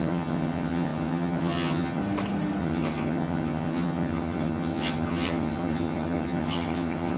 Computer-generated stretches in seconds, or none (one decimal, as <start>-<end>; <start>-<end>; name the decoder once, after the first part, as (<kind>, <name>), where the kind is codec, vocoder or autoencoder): 0.0-2.0 (vocoder, HiFi-GAN); 2.6-7.2